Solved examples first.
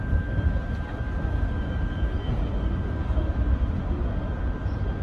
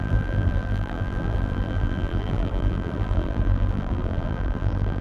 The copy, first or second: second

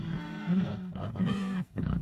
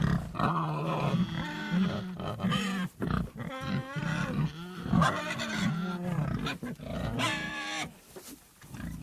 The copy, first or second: first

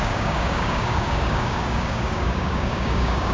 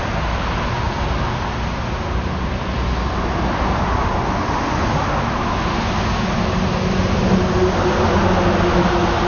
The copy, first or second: first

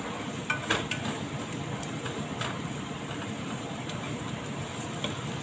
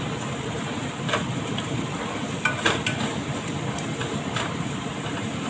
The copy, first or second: second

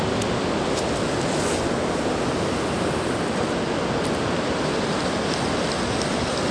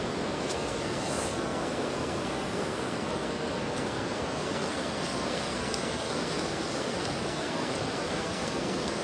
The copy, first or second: second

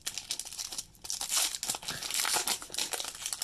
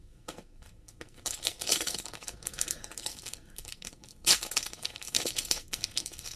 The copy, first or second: second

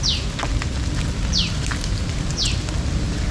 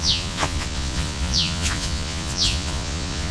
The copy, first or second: second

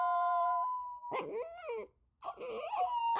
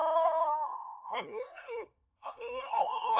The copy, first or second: second